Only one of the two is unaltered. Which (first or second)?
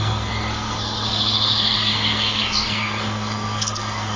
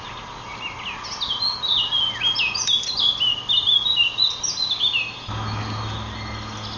second